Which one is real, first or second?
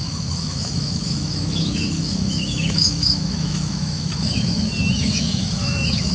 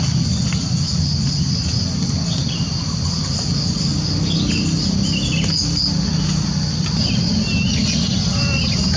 second